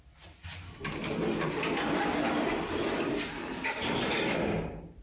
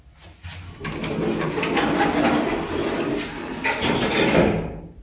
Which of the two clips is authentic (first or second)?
second